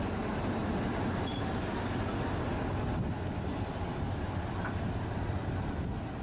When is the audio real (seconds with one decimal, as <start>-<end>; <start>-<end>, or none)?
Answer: 0.0-6.2